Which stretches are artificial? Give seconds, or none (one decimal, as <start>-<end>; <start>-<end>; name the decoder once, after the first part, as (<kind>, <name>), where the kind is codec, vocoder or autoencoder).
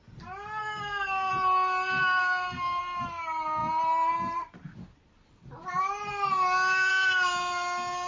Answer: 0.6-1.3 (codec, SNAC); 2.0-2.8